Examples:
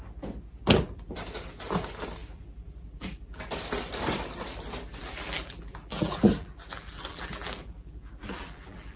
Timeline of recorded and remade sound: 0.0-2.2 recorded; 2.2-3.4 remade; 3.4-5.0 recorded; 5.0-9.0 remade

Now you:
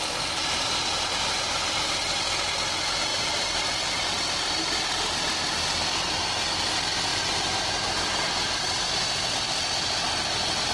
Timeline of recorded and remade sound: 0.0-10.7 recorded